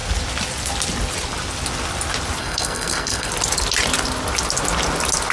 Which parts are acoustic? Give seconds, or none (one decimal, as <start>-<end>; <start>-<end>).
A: 0.0-2.4; 3.3-5.3